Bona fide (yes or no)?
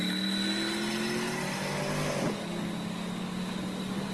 yes